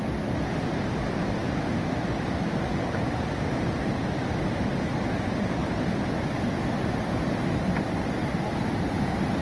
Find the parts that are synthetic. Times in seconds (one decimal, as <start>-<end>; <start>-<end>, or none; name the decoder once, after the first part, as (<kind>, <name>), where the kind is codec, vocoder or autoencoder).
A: 5.6-6.9 (vocoder, BigVGAN v2)

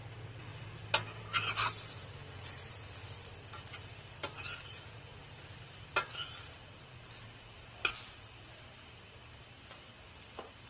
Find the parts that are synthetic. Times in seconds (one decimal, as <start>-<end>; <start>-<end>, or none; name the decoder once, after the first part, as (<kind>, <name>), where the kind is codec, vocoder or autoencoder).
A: none